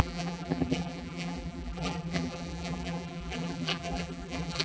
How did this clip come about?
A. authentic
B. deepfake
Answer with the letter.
B